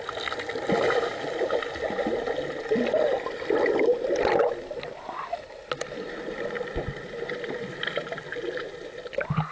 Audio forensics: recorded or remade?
recorded